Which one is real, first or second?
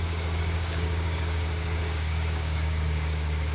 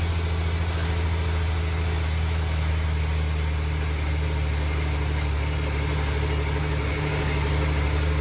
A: second